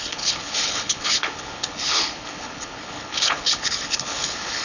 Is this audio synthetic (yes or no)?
yes